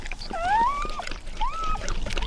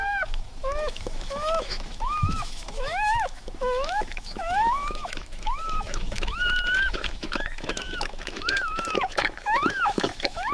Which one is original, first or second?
first